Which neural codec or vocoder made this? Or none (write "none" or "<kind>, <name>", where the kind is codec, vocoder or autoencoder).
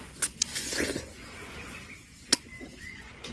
vocoder, Vocos